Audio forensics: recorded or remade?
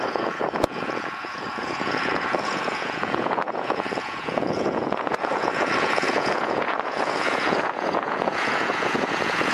remade